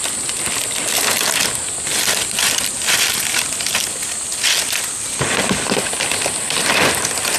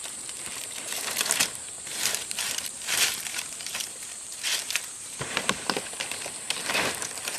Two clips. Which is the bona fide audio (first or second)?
first